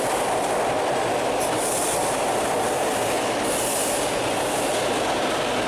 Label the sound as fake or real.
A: real